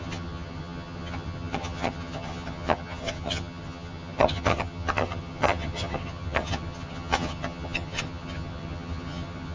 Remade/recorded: remade